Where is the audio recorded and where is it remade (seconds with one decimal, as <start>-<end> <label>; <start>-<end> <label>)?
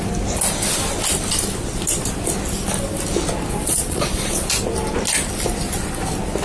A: 0.0-3.5 recorded; 3.5-4.5 remade; 4.5-6.4 recorded